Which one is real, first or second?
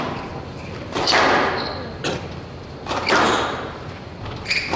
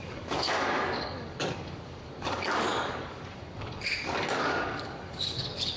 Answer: first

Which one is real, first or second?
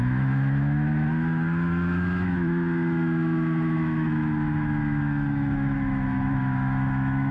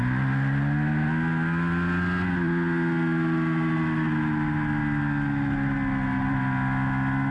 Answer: second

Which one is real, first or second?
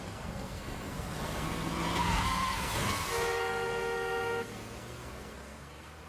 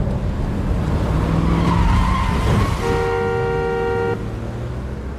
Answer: second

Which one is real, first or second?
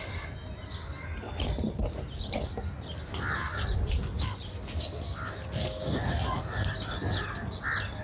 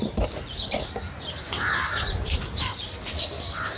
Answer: first